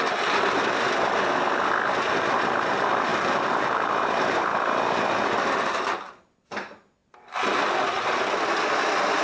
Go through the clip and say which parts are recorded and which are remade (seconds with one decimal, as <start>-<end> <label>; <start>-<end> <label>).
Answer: 0.0-3.1 recorded; 3.1-4.8 remade; 4.8-7.0 recorded; 7.0-8.3 remade; 8.3-9.2 recorded